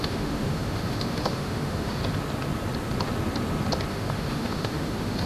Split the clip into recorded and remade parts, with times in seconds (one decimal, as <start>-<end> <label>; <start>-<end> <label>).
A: 0.0-2.0 remade; 2.0-3.9 recorded; 3.9-5.3 remade